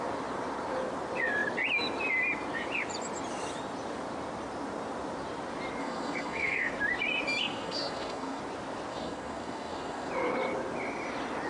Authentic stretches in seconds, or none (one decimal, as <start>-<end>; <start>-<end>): 0.0-5.8; 6.7-7.4; 8.4-8.9; 10.1-11.5